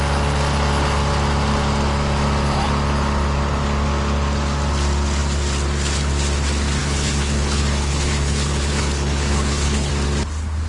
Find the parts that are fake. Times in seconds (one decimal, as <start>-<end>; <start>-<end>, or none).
6.8-9.9